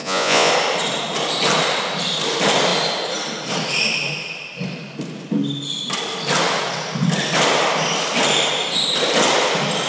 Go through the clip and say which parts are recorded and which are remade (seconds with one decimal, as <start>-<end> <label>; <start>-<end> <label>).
0.0-0.5 remade; 0.5-9.9 recorded